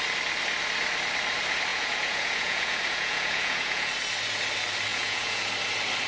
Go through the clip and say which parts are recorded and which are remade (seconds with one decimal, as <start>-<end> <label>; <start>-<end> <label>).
0.0-1.7 recorded; 1.7-3.9 remade; 3.9-4.9 recorded; 4.9-5.5 remade; 5.5-6.1 recorded